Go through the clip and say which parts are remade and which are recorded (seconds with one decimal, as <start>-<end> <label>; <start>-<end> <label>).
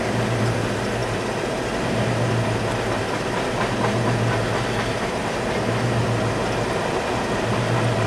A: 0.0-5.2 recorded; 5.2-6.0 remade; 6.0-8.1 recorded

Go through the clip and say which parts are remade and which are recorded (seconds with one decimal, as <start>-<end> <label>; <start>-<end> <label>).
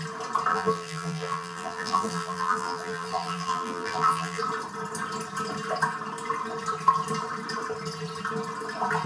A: 0.0-0.5 recorded; 0.5-4.4 remade; 4.4-9.1 recorded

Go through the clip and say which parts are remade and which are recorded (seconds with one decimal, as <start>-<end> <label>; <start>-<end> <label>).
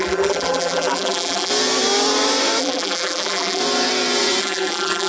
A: 0.0-1.5 remade; 1.5-2.6 recorded; 2.6-3.6 remade; 3.6-4.4 recorded; 4.4-5.1 remade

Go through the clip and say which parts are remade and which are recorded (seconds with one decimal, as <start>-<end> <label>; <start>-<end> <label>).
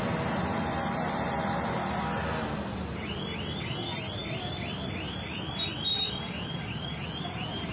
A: 0.0-7.7 remade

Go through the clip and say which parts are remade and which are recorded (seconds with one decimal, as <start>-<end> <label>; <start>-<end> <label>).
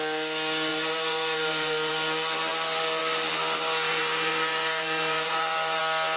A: 0.0-0.7 recorded; 0.7-1.9 remade; 1.9-3.9 recorded; 3.9-5.8 remade; 5.8-6.2 recorded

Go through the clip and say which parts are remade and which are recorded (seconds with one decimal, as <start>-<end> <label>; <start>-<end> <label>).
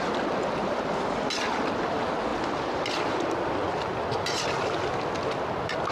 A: 0.0-5.9 recorded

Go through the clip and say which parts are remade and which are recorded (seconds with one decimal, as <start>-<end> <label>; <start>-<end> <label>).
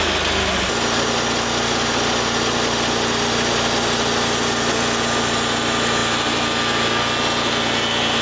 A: 0.0-8.2 recorded